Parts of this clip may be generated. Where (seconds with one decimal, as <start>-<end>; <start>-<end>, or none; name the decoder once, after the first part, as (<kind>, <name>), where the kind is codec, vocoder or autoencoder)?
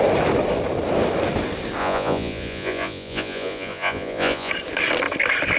1.8-4.5 (vocoder, Vocos)